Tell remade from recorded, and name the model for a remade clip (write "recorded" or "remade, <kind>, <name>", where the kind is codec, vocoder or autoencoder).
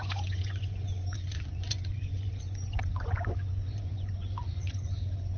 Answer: remade, vocoder, Vocos